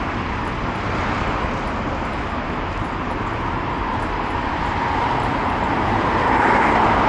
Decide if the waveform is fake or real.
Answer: real